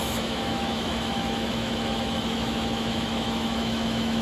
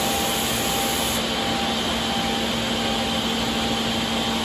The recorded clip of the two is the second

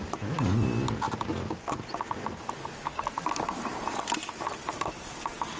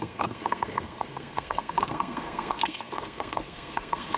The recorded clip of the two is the first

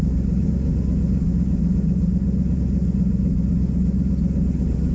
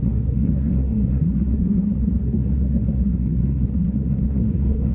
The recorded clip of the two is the first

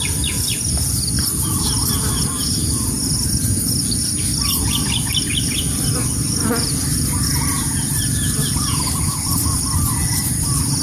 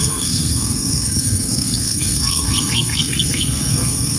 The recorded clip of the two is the first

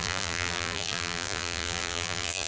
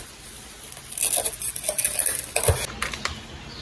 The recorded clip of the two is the second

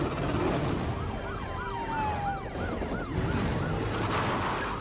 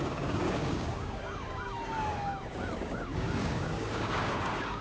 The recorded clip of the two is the first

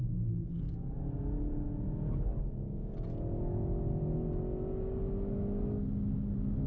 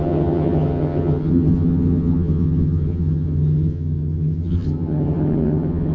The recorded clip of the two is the first